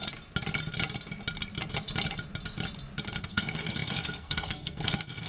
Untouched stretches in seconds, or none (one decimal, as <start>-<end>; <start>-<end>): 0.0-3.2